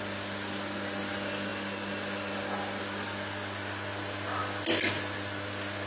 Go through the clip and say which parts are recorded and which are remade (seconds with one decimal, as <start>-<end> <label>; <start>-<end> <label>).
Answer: 0.0-5.9 recorded